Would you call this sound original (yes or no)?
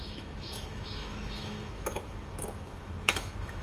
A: no